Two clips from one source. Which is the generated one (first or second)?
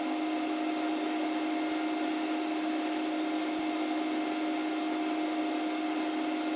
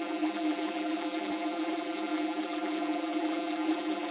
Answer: second